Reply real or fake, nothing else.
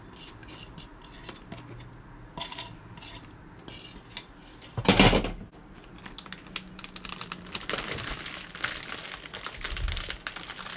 real